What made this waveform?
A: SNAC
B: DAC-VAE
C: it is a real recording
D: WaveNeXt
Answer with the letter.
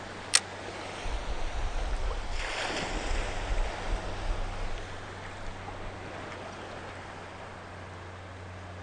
C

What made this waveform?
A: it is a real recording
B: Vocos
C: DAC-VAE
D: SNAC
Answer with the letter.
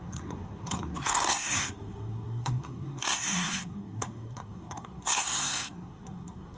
D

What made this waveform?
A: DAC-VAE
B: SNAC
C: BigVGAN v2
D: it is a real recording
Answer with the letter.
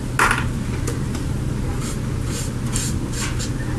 D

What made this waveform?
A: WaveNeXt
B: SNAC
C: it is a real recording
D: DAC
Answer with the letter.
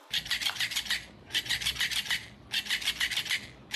C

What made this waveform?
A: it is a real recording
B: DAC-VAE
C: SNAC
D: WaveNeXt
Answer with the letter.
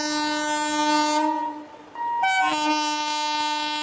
A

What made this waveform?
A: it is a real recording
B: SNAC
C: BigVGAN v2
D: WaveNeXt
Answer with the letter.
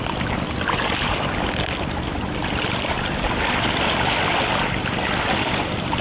A